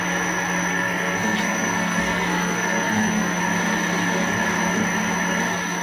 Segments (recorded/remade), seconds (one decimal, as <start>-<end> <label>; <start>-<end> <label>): 0.0-0.7 recorded; 0.7-3.4 remade; 3.4-5.8 recorded